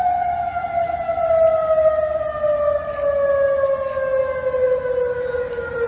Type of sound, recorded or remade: recorded